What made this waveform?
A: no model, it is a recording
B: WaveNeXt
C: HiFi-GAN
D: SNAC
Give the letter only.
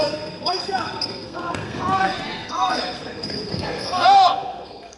D